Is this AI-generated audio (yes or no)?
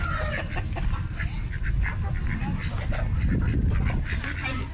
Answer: no